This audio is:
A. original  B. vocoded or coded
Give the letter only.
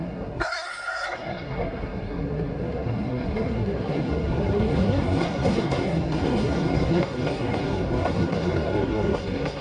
B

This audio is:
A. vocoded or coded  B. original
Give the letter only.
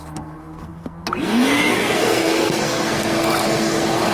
A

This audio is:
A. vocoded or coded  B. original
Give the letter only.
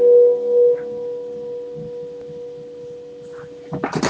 B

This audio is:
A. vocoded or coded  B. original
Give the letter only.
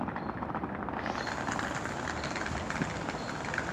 B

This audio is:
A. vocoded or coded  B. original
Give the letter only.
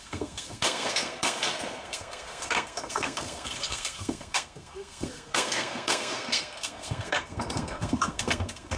A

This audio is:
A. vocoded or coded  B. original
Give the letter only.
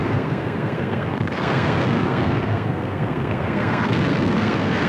A